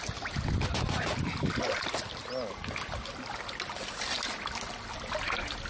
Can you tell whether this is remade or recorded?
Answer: recorded